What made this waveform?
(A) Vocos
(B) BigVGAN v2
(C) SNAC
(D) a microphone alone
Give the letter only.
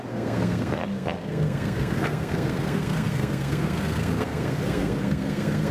C